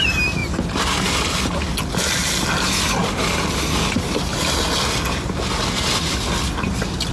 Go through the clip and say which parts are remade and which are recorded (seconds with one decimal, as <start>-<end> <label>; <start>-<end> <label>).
0.0-7.1 recorded